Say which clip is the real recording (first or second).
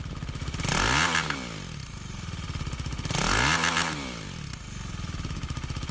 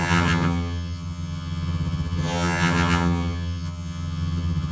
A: first